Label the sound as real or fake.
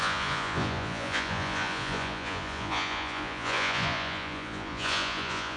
fake